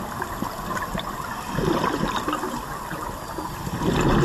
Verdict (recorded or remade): recorded